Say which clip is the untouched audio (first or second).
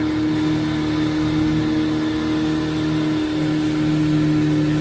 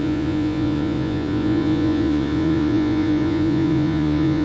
first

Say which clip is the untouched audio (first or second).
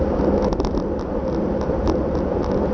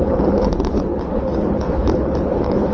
first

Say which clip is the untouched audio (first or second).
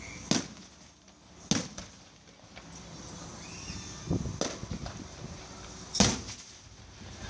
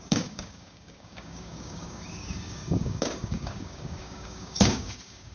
first